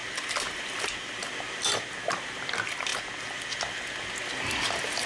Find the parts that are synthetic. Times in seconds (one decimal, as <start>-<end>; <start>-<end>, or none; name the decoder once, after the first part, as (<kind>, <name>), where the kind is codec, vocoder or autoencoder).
none